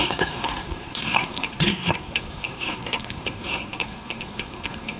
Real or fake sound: fake